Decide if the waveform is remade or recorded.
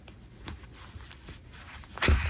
recorded